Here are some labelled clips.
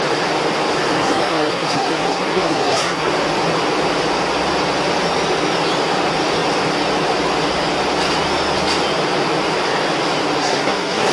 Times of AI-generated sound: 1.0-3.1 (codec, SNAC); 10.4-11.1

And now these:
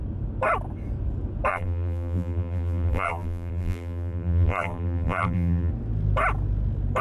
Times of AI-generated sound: 1.5-5.7 (vocoder, BigVGAN v2)

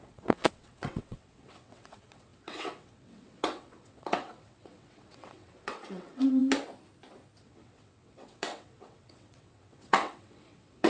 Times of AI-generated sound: 0.0-6.4 (vocoder, WaveNeXt); 7.4-10.9

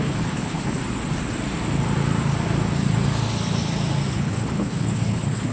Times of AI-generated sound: 0.0-0.8 (codec, HILCodec); 4.1-5.5

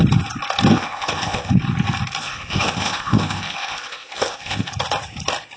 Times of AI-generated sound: 0.7-1.5 (codec, ZipCodec); 2.2-4.7

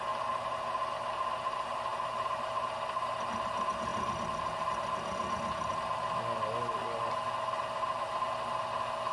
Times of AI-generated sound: none

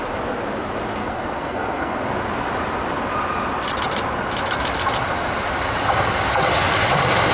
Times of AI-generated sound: 1.0-2.0 (codec, SNAC)